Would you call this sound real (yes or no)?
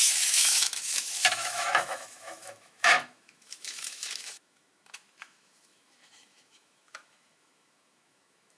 no